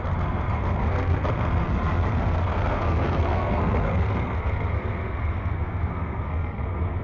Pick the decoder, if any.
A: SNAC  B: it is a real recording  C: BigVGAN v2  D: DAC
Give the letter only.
A